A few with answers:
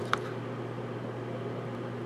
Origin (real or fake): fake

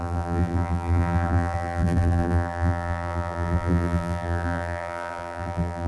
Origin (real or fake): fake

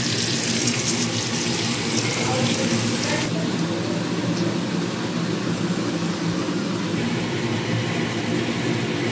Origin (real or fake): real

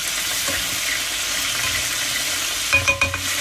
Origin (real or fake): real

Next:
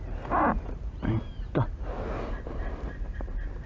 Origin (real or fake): fake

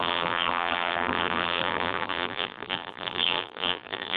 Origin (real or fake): fake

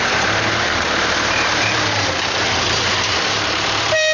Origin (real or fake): fake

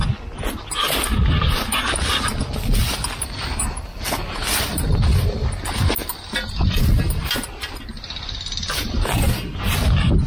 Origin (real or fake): real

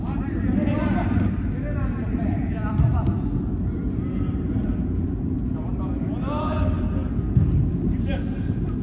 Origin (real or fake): real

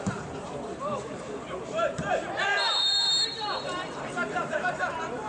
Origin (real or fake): fake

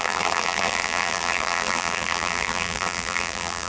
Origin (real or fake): fake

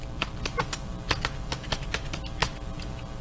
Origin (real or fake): real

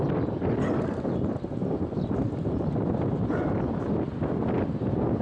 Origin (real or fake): real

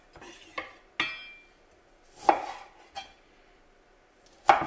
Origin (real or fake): real